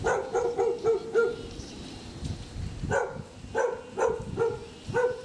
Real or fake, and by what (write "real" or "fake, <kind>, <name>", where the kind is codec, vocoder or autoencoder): real